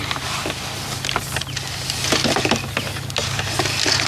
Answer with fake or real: real